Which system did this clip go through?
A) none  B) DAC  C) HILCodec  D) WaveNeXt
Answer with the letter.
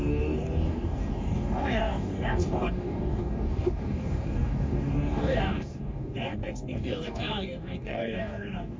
B